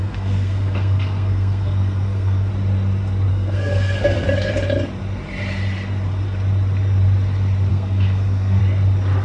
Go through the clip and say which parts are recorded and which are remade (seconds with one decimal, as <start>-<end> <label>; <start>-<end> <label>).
0.0-2.5 remade; 2.5-3.3 recorded; 3.3-4.5 remade; 4.5-7.7 recorded; 7.7-8.6 remade; 8.6-9.2 recorded